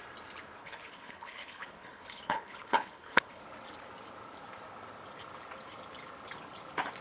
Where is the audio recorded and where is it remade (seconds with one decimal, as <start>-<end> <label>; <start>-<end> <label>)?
0.0-0.6 recorded; 0.6-3.4 remade; 3.4-7.0 recorded